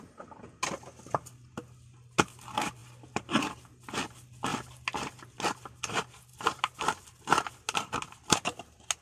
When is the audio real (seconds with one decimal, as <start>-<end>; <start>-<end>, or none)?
0.0-2.8; 3.4-6.3; 6.8-9.0